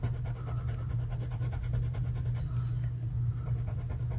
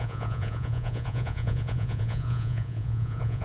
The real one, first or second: first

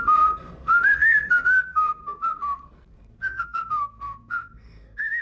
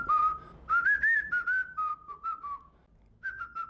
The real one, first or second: second